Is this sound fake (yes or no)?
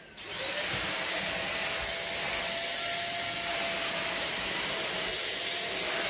no